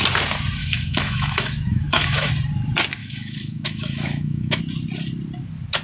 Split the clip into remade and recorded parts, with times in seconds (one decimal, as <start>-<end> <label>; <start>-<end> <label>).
0.0-0.6 recorded; 0.6-2.3 remade; 2.3-3.0 recorded; 3.0-4.6 remade; 4.6-5.8 recorded